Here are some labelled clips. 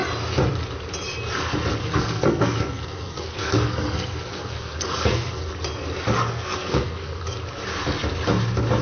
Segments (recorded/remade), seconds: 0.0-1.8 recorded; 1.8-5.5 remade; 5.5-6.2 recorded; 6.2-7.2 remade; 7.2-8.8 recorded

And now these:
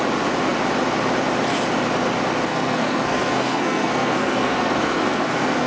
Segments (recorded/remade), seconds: 0.0-2.5 recorded; 2.5-5.7 remade

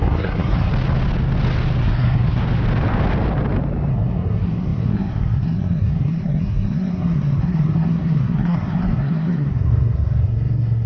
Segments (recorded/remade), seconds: 0.0-0.7 remade; 0.7-1.8 recorded; 1.8-2.4 remade; 2.4-3.9 recorded; 3.9-10.9 remade

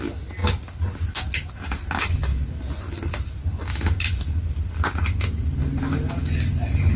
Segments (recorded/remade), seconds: 0.0-7.0 recorded

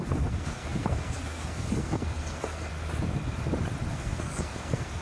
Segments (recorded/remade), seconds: 0.0-2.7 remade; 2.7-3.9 recorded; 3.9-5.0 remade